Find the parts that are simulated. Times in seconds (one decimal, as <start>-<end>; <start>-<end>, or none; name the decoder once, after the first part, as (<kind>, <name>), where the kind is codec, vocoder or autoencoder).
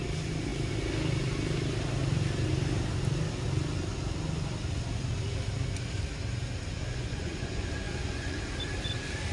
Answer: 6.8-8.4 (vocoder, Vocos)